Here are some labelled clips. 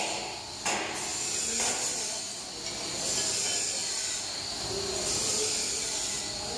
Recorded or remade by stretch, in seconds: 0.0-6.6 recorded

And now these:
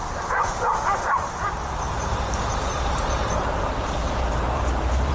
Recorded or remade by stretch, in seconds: 0.0-5.1 remade

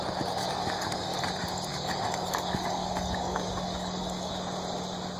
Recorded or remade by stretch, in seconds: 0.0-0.4 recorded; 0.4-1.2 remade; 1.2-1.7 recorded; 1.7-4.3 remade; 4.3-5.2 recorded